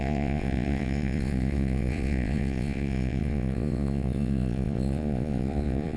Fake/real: fake